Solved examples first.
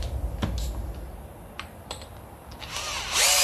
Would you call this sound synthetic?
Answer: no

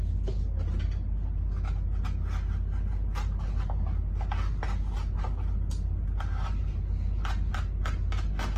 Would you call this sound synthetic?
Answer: no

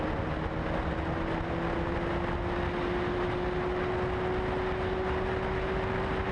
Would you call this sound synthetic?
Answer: no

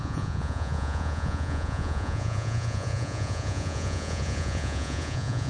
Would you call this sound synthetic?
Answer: yes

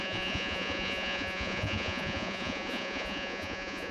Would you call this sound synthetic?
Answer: yes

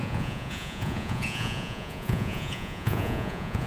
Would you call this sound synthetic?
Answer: yes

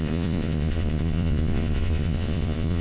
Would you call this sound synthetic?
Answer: yes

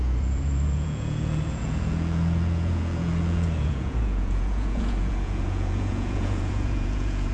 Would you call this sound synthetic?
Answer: yes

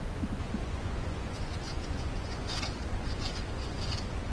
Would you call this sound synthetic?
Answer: yes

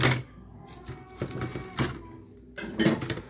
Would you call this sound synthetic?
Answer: no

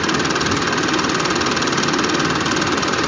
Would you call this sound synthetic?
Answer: no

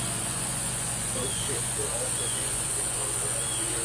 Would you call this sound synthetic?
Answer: yes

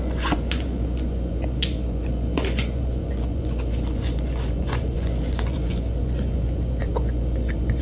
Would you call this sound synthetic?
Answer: yes